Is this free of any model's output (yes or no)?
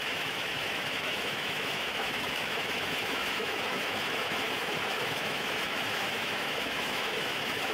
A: no